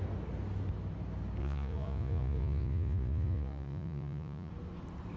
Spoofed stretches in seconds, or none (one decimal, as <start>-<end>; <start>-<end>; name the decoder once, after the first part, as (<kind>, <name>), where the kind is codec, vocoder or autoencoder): 1.4-4.5 (vocoder, Vocos)